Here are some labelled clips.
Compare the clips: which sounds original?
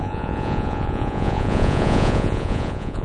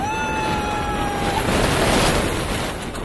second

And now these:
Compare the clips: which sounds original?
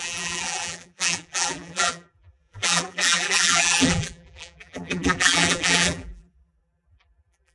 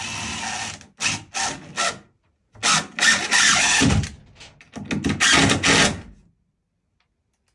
second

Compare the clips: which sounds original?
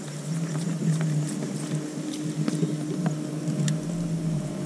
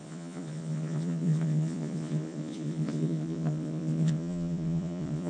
first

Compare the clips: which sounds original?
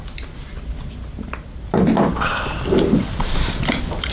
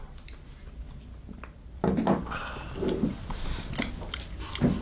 second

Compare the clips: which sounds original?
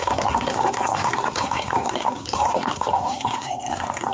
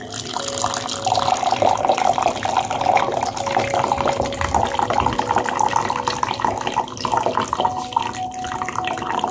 second